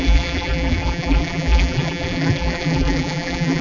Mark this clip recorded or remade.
remade